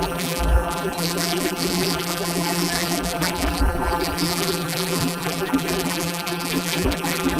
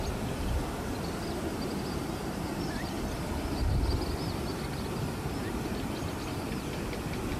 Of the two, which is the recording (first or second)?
second